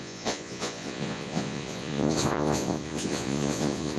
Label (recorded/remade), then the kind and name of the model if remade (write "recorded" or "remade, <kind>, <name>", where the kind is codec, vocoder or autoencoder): remade, vocoder, Vocos